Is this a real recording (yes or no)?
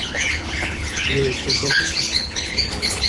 no